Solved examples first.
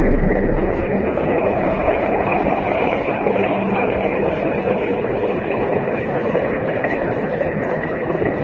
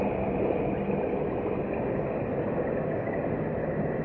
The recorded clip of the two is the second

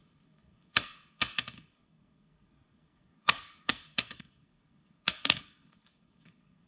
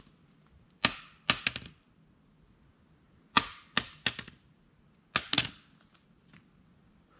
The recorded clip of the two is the second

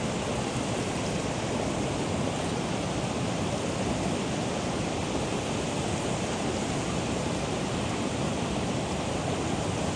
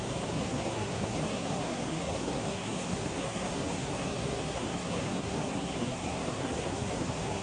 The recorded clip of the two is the first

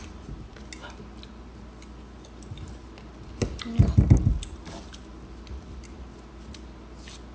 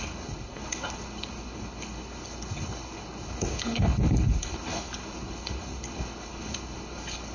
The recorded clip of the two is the first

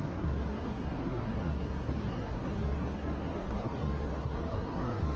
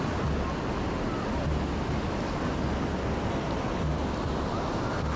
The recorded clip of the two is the second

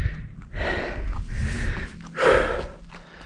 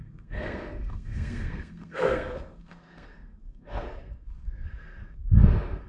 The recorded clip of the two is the first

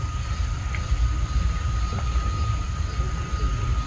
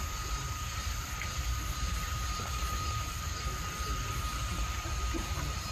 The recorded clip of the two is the first